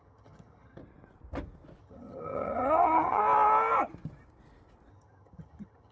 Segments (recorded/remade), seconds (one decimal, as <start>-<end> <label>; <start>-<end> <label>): 0.0-0.8 remade; 0.8-1.8 recorded; 1.8-3.2 remade; 3.2-4.9 recorded; 4.9-5.9 remade